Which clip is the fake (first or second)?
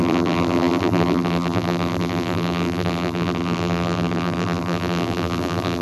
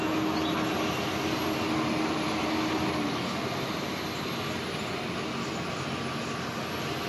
first